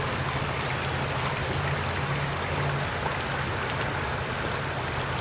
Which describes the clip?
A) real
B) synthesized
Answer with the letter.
A